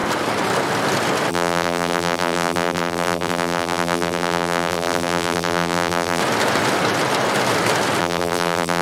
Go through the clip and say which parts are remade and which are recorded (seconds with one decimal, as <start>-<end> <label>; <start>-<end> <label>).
0.0-1.3 recorded; 1.3-6.2 remade; 6.2-8.0 recorded; 8.0-8.8 remade